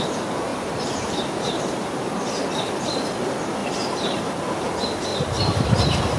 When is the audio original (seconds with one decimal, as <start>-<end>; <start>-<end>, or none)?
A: 0.0-0.5; 2.1-3.6; 4.2-5.1